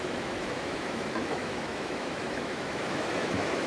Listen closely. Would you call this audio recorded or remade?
remade